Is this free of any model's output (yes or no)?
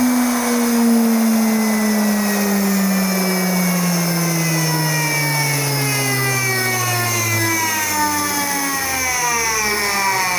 yes